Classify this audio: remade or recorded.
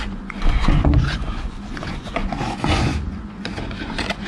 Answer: remade